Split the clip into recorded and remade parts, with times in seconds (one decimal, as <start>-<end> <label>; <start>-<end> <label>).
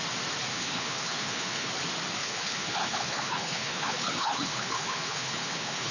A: 0.0-0.5 recorded; 0.5-1.7 remade; 1.7-2.2 recorded; 2.2-5.9 remade